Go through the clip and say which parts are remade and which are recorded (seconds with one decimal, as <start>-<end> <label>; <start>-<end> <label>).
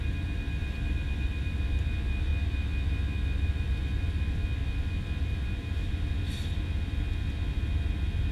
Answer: 0.0-8.3 recorded